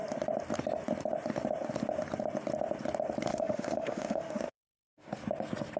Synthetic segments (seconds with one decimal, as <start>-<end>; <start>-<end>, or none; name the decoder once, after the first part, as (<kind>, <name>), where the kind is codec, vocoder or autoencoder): 3.3-5.1 (autoencoder, DAC-VAE)